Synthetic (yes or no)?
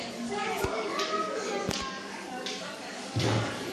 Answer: yes